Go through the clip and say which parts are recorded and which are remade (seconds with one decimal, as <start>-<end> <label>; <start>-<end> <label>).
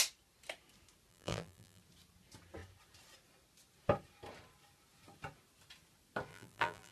0.0-1.1 recorded; 1.1-1.8 remade; 1.8-6.3 recorded; 6.3-6.9 remade